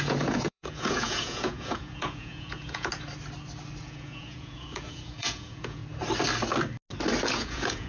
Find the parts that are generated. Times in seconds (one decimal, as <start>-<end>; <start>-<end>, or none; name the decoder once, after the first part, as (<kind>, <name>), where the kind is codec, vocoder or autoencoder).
0.0-2.9 (vocoder, Vocos); 3.8-5.8; 7.3-7.9